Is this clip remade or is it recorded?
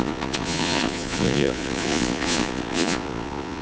remade